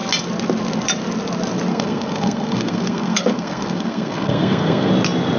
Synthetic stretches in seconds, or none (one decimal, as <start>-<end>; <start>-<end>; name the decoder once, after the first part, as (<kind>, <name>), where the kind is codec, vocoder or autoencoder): 1.7-4.9 (codec, SNAC)